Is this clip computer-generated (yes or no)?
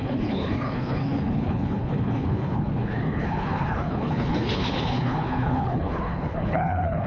yes